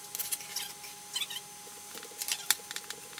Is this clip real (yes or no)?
yes